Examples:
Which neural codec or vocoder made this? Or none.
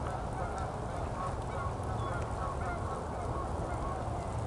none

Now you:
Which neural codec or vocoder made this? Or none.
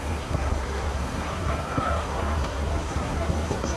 codec, SNAC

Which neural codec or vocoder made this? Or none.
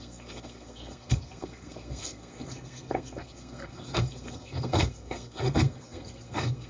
codec, SNAC